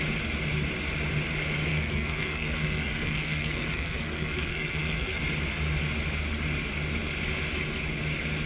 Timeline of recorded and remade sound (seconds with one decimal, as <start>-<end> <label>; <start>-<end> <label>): 0.0-1.7 recorded; 1.7-5.2 remade; 5.2-8.5 recorded